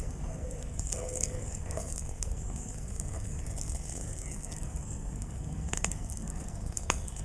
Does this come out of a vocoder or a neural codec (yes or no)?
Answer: yes